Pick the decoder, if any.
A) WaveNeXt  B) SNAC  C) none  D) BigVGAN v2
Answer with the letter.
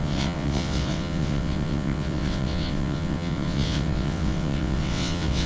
A